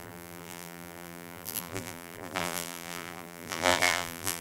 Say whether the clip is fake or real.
fake